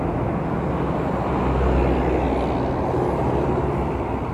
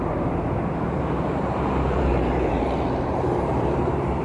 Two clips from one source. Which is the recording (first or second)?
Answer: first